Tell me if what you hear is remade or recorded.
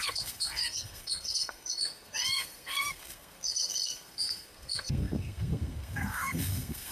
remade